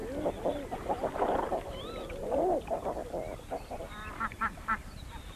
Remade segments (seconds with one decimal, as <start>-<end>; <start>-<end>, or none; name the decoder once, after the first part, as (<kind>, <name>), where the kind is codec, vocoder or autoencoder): 1.4-3.0 (vocoder, BigVGAN v2); 3.9-5.4